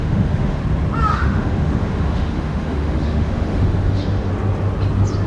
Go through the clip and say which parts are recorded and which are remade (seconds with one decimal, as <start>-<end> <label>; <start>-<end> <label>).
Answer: 0.0-0.6 remade; 0.6-1.1 recorded; 1.1-4.3 remade; 4.3-5.3 recorded